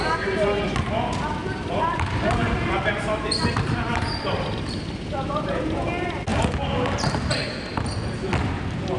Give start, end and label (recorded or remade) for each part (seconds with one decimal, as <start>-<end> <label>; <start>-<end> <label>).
0.0-1.4 recorded; 1.4-5.6 remade; 5.6-6.3 recorded; 6.3-7.6 remade; 7.6-9.0 recorded